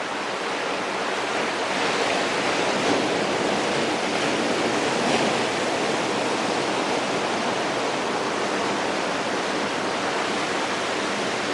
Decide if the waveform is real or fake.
real